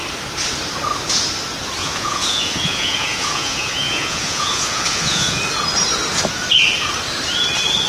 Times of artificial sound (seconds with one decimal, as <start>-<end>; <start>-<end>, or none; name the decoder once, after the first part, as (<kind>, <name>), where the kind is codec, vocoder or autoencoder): 1.8-5.4 (vocoder, Vocos)